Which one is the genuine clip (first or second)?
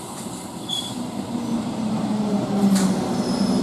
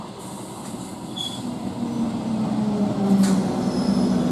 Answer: second